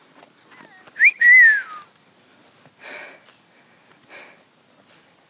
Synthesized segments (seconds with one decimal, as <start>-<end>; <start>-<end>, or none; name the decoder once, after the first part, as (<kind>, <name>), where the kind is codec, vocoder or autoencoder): none